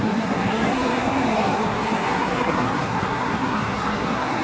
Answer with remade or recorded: remade